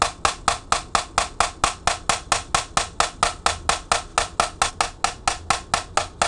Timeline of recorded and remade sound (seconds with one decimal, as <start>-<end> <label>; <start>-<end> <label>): 0.0-6.3 recorded